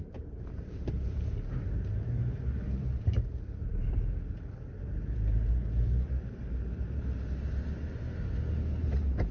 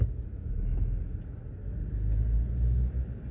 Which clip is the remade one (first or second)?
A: first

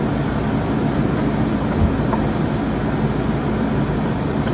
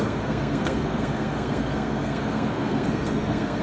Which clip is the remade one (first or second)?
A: second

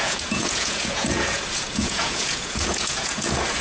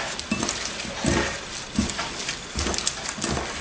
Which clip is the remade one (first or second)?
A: first